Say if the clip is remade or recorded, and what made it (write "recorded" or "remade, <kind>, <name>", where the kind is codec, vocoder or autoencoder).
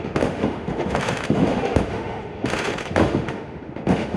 remade, autoencoder, DAC-VAE